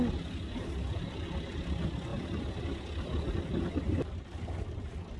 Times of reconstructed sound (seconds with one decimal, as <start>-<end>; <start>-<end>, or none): none